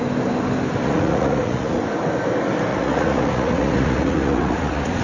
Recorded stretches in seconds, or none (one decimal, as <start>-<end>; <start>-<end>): 0.0-0.8; 1.8-2.7